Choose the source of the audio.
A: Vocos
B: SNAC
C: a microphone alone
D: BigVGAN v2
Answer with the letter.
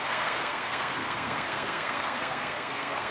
B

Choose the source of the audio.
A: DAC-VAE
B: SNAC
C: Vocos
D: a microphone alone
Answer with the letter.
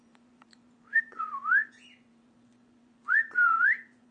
C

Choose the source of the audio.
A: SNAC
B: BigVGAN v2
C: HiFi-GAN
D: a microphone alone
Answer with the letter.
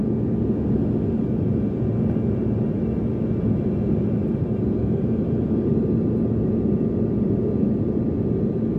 D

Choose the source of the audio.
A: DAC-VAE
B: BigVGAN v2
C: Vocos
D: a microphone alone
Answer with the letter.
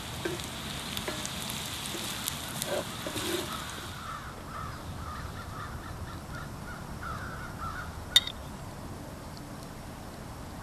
D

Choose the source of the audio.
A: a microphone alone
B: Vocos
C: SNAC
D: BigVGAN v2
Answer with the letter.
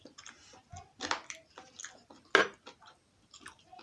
A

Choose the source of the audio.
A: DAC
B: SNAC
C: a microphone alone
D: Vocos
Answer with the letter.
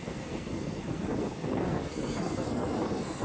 B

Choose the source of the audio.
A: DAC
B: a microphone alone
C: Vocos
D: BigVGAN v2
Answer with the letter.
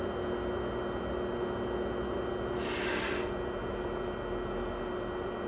B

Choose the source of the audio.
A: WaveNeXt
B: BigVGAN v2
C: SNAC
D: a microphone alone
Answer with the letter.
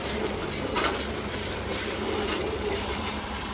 B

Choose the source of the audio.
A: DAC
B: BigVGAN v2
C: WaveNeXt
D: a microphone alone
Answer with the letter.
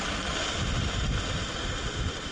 B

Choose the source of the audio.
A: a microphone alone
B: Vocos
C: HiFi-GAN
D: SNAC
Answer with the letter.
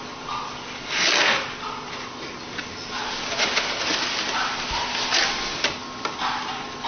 A